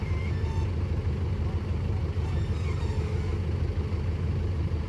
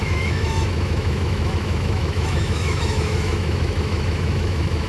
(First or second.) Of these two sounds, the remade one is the second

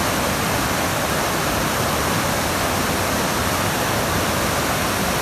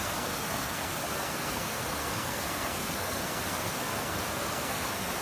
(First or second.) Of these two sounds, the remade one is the second